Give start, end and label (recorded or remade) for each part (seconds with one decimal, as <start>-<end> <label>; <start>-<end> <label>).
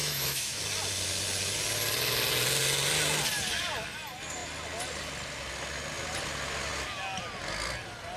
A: 0.0-0.6 remade; 0.6-8.2 recorded